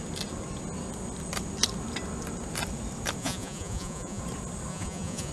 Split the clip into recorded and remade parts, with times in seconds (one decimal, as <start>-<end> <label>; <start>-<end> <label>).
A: 0.0-3.2 recorded; 3.2-4.2 remade; 4.2-4.7 recorded; 4.7-5.3 remade